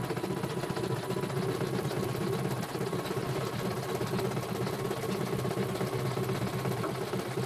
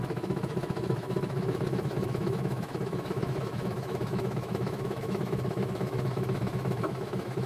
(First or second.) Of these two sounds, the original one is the first